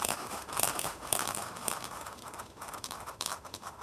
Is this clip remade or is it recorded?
remade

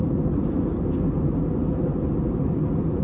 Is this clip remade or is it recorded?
recorded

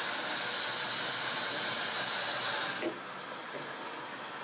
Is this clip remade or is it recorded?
recorded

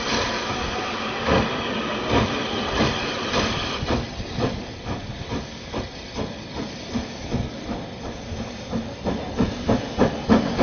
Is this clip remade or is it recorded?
recorded